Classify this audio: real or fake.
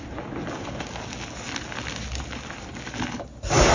real